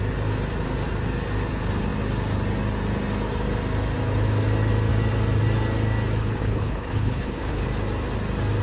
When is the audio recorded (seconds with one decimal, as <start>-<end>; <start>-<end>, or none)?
0.0-6.2; 7.6-8.6